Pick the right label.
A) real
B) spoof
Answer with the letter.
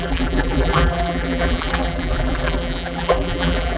B